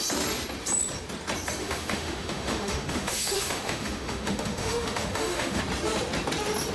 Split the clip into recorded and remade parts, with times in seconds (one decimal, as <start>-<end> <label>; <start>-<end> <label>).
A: 0.0-1.6 recorded; 1.6-5.6 remade; 5.6-6.7 recorded